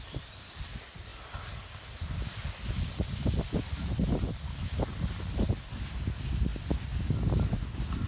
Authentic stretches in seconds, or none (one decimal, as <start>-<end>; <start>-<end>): 0.0-8.1

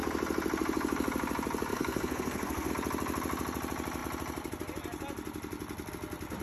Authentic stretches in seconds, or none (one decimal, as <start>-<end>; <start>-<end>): 0.0-1.7; 2.7-6.4

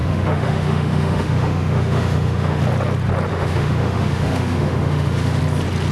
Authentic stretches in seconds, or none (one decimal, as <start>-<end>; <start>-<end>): 2.6-3.3; 5.4-5.9

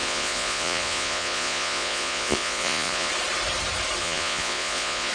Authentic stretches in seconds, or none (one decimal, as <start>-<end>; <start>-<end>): 3.1-4.0

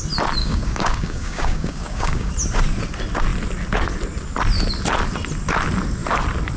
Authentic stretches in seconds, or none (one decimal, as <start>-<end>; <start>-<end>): 0.0-0.4; 2.3-6.6

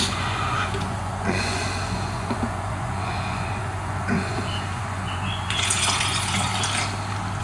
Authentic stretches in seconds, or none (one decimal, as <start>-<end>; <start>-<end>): 6.5-7.4

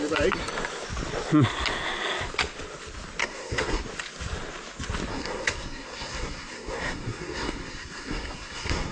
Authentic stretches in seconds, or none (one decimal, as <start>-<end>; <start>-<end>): 0.0-3.2; 3.8-5.1